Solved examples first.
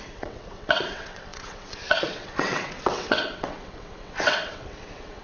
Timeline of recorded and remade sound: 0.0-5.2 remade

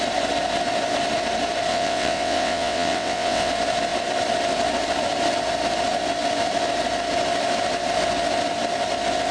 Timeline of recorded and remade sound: 0.0-1.7 recorded; 1.7-3.5 remade; 3.5-9.3 recorded